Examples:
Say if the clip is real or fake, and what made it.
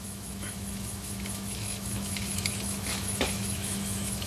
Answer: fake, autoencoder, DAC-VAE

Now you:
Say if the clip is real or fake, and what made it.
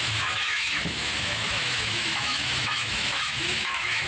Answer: fake, autoencoder, DAC-VAE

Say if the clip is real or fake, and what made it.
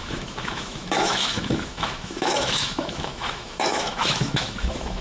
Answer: fake, autoencoder, DAC-VAE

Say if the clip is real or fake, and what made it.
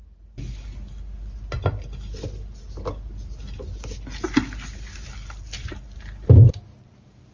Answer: real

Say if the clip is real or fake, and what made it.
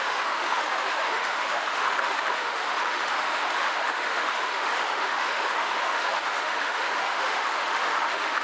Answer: fake, autoencoder, DAC-VAE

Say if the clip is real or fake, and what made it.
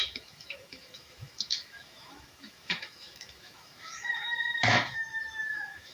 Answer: fake, autoencoder, DAC-VAE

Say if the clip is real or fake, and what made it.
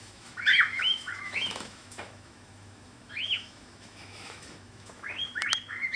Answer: fake, autoencoder, DAC-VAE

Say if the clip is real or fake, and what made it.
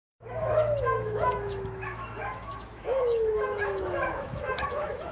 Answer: fake, autoencoder, DAC-VAE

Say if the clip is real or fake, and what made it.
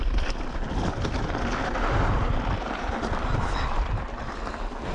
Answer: real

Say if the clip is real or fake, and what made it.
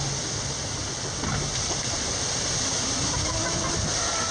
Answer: real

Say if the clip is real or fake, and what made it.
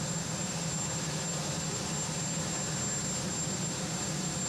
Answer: real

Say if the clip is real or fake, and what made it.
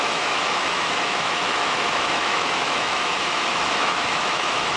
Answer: fake, autoencoder, DAC-VAE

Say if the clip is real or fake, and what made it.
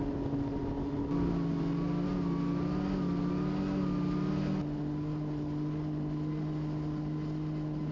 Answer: real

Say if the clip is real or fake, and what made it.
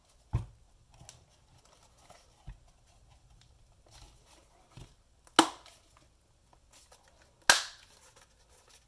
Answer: real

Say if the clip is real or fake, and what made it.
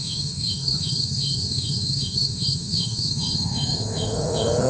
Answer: fake, autoencoder, DAC-VAE